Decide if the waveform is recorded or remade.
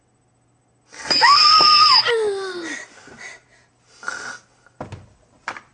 recorded